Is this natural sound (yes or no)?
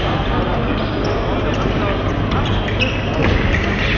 yes